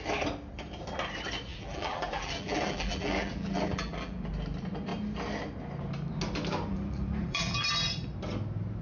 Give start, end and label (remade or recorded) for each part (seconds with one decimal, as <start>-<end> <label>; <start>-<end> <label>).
0.0-1.5 recorded; 1.5-4.3 remade; 4.3-6.7 recorded; 6.7-7.7 remade; 7.7-8.8 recorded